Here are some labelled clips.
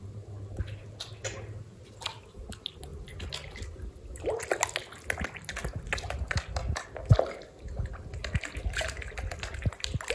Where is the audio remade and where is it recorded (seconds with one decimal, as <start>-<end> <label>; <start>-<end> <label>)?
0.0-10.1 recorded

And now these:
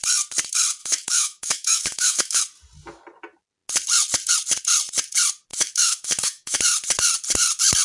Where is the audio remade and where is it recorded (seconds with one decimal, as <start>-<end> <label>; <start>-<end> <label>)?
0.0-0.8 recorded; 0.8-2.4 remade; 2.4-5.5 recorded; 5.5-6.6 remade; 6.6-7.8 recorded

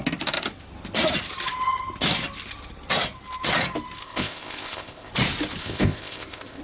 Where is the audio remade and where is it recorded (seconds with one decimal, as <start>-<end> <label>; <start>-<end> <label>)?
0.0-4.0 recorded; 4.0-5.1 remade; 5.1-5.6 recorded; 5.6-6.6 remade